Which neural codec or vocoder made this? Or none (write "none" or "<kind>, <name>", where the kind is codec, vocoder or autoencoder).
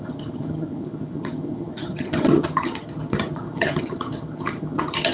vocoder, HiFi-GAN